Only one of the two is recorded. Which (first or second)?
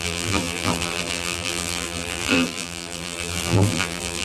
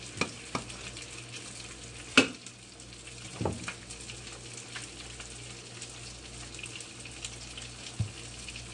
second